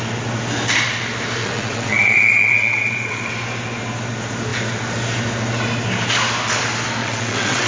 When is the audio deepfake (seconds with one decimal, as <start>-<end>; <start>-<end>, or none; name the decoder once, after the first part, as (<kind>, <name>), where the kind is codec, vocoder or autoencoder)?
1.4-3.3 (vocoder, WaveNeXt); 7.0-7.7